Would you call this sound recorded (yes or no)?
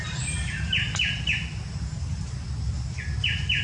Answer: yes